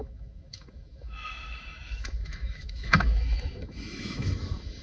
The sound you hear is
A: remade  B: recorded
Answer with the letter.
A